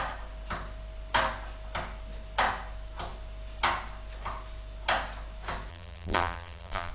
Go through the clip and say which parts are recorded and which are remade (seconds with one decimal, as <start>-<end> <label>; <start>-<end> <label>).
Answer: 0.0-5.7 recorded; 5.7-6.9 remade